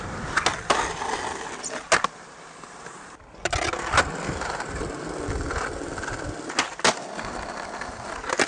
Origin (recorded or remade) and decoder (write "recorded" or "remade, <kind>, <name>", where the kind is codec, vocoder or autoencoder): recorded